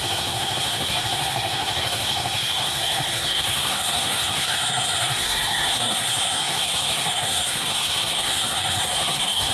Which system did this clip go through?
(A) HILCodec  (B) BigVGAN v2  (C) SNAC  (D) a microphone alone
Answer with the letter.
C